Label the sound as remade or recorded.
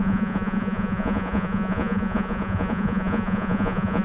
remade